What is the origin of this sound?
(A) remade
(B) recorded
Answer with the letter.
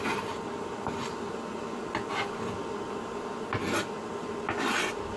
B